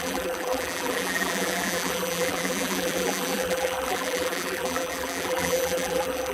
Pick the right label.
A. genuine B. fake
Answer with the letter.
B